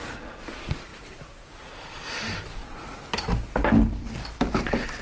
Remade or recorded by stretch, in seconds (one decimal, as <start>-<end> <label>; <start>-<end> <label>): 0.0-5.0 recorded